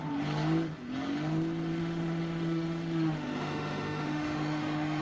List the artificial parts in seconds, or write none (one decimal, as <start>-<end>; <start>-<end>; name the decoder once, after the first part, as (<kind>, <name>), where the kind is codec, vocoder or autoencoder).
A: 1.8-5.0 (autoencoder, DAC-VAE)

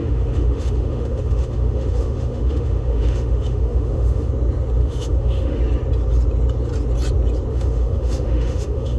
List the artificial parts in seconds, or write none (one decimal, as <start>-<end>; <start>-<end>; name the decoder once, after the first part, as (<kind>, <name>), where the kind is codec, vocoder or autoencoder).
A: 0.0-4.3 (autoencoder, DAC-VAE); 4.8-5.6; 7.5-9.0

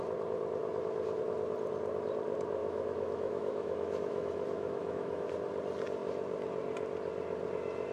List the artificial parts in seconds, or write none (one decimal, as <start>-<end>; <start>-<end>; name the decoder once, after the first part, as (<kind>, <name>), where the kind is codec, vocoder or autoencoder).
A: 2.6-5.3 (autoencoder, DAC-VAE)

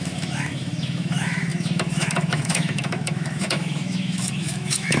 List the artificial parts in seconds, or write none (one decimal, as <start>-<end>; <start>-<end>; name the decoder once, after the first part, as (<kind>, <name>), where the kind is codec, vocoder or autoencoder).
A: 0.0-5.0 (autoencoder, DAC-VAE)

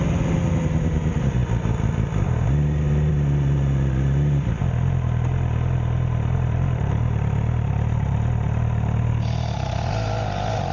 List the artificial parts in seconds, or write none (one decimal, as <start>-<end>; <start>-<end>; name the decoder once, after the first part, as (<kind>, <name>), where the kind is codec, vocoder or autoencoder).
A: none

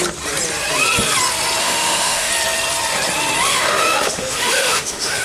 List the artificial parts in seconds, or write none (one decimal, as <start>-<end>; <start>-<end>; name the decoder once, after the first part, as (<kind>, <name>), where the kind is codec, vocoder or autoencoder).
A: 1.6-2.3 (autoencoder, DAC-VAE); 3.5-5.2